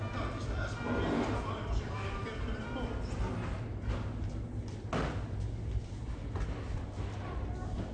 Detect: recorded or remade recorded